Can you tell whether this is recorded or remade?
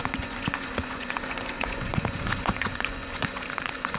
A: remade